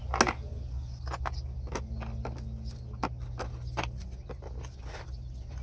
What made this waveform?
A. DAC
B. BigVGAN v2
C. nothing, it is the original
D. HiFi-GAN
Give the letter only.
C